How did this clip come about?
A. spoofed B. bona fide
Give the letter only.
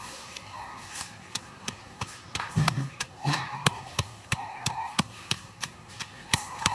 A